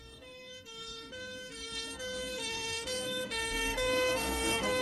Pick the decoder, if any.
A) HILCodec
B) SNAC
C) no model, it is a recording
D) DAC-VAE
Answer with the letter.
B